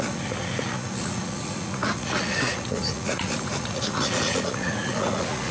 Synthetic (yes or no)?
yes